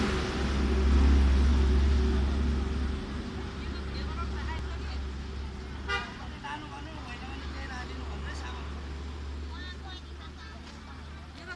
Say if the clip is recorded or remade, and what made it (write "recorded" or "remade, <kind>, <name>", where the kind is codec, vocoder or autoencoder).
recorded